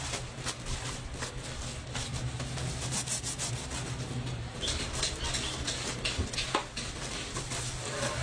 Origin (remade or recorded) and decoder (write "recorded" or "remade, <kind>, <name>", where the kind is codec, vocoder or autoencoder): recorded